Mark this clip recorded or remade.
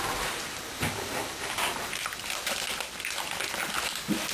recorded